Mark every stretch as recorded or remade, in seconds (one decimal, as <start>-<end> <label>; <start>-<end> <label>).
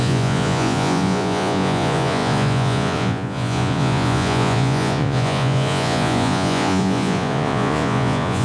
0.0-8.4 remade